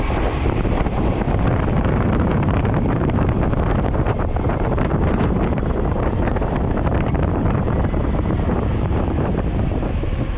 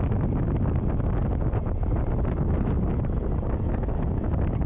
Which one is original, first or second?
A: second